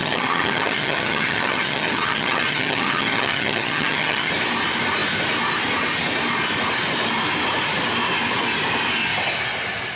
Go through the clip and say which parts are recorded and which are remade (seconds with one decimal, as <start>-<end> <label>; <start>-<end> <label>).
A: 0.0-4.3 remade; 4.3-10.0 recorded